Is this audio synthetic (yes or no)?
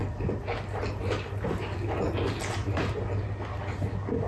no